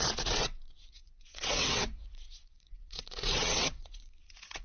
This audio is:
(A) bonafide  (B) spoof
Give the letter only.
B